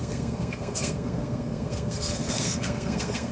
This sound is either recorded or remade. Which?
remade